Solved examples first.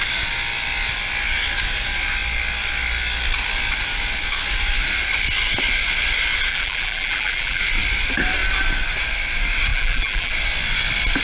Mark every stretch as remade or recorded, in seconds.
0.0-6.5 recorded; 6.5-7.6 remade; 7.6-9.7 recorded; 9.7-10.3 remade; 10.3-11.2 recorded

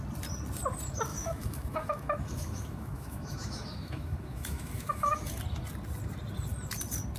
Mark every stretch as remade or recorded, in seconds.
0.0-1.1 recorded; 1.1-5.4 remade; 5.4-7.2 recorded

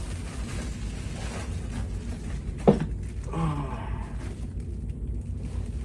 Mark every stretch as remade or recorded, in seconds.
0.0-5.8 recorded

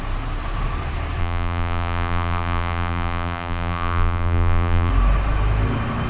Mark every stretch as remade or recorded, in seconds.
0.0-1.2 recorded; 1.2-4.9 remade; 4.9-6.1 recorded

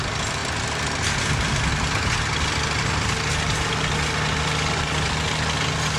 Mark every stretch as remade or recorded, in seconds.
0.0-0.4 recorded; 0.4-0.9 remade; 0.9-6.0 recorded

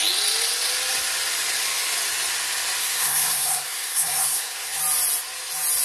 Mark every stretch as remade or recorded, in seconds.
0.0-2.8 recorded; 2.8-4.8 remade; 4.8-5.8 recorded